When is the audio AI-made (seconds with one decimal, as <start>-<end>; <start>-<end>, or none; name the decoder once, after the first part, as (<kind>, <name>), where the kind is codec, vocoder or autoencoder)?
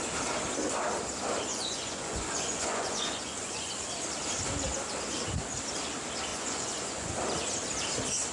1.5-3.7 (vocoder, Vocos); 6.3-7.1